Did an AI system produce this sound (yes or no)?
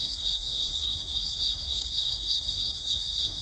yes